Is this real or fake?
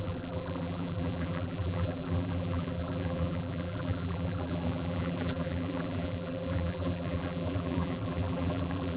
fake